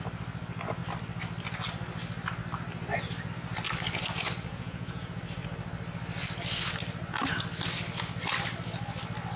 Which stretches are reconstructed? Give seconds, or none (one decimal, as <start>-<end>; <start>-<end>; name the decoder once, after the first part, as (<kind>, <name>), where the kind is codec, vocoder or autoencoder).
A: 4.5-5.2 (vocoder, Vocos)